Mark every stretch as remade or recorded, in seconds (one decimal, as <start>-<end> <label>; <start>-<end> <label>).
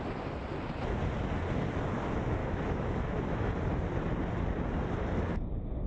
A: 0.0-2.4 recorded; 2.4-3.5 remade; 3.5-5.9 recorded